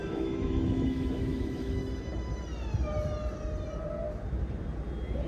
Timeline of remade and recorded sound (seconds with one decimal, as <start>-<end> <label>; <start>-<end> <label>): 0.0-1.8 remade; 1.8-5.3 recorded